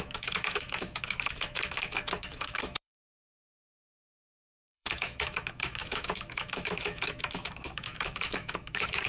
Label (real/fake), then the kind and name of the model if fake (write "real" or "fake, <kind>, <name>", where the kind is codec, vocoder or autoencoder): fake, autoencoder, DAC-VAE